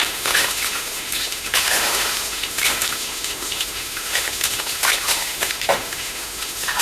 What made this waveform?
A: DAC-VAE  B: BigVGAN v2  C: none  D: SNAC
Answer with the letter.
A